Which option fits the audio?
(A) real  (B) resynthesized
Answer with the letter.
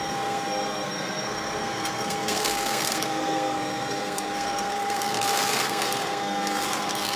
B